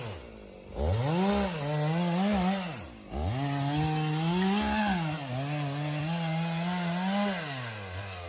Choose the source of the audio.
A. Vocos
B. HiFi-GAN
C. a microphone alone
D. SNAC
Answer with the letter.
C